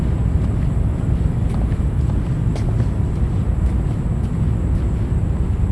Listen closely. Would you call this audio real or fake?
real